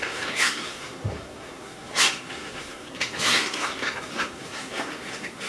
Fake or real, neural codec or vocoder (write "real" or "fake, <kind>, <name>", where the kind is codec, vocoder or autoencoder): fake, codec, SNAC